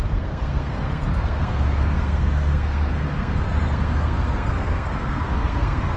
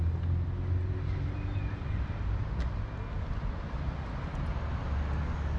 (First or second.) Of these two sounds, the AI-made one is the first